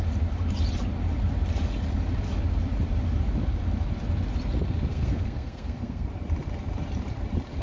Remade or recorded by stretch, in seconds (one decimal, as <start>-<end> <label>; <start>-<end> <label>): 0.0-4.9 recorded; 4.9-6.1 remade; 6.1-7.6 recorded